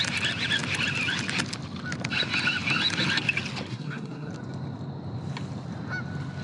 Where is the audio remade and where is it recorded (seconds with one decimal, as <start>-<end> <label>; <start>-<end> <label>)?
0.0-3.7 recorded; 3.7-4.3 remade; 4.3-6.4 recorded